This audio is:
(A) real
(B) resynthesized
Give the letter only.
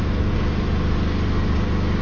A